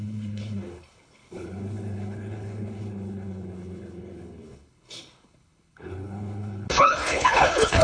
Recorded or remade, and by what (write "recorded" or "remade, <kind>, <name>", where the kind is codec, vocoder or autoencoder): remade, codec, HILCodec